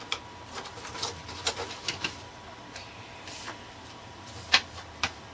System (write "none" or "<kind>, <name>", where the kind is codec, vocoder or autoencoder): vocoder, BigVGAN v2